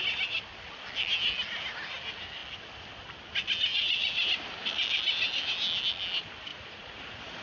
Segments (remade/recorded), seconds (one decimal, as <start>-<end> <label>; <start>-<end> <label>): 0.0-6.5 recorded; 6.5-7.4 remade